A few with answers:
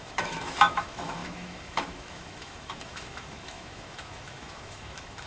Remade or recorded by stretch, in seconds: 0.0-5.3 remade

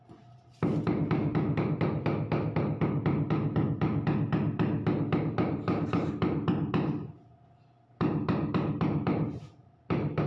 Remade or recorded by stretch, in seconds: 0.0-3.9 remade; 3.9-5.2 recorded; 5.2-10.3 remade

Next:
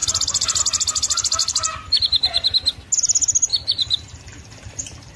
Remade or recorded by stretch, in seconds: 0.0-1.4 recorded; 1.4-2.0 remade; 2.0-3.5 recorded; 3.5-5.2 remade

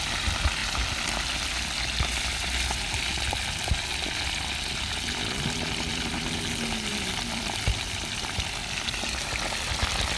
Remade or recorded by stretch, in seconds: 0.0-0.6 remade; 0.6-2.2 recorded; 2.2-3.1 remade; 3.1-6.9 recorded; 6.9-10.2 remade